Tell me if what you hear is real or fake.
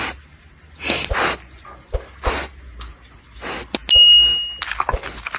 real